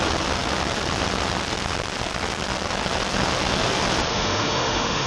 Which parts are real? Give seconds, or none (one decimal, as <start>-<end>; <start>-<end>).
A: 0.0-4.1